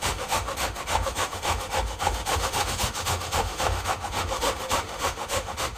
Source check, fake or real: fake